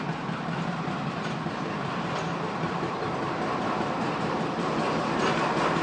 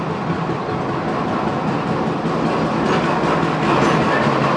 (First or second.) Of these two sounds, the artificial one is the first